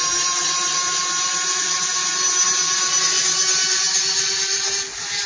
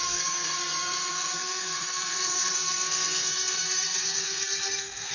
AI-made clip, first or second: second